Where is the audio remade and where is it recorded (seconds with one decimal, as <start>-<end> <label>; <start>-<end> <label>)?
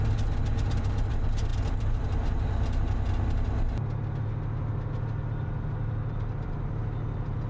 0.0-7.5 recorded